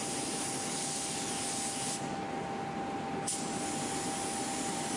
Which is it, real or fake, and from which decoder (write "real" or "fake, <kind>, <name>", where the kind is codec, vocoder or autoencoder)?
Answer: real